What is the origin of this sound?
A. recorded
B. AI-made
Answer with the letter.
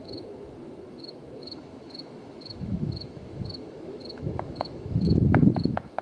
B